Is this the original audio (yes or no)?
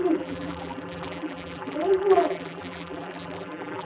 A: no